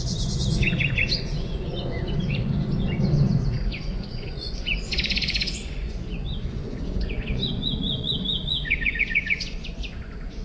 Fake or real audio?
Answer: fake